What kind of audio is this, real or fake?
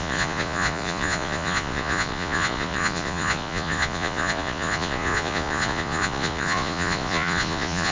fake